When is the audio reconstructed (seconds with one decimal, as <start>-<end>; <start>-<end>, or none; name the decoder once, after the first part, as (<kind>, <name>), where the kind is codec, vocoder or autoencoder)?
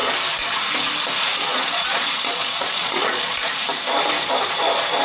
1.3-3.5 (vocoder, Vocos)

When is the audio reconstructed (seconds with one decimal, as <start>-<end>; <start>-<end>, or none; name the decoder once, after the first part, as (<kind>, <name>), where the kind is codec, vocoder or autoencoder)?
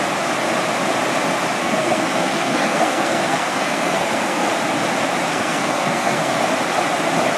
1.6-4.5 (codec, SNAC); 5.3-6.4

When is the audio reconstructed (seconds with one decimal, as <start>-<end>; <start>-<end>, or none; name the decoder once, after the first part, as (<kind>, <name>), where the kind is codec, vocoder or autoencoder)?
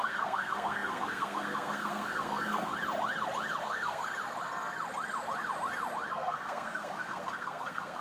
0.0-2.7 (codec, SNAC); 3.6-4.1; 6.1-8.0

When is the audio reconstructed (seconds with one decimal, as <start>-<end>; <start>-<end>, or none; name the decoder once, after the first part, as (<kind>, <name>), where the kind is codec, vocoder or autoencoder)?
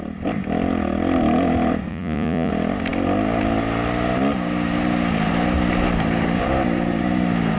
1.9-2.5 (vocoder, Vocos)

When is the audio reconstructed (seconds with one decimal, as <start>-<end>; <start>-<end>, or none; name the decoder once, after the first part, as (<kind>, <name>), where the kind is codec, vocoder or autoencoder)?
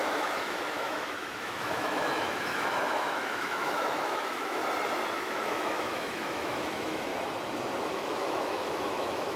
0.0-4.6 (autoencoder, DAC-VAE); 5.1-7.1; 7.9-9.4